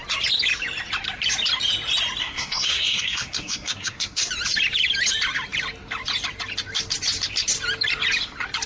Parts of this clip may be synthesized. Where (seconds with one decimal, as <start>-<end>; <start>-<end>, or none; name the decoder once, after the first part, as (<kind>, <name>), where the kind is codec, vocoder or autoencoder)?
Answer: 2.2-4.3 (codec, SNAC)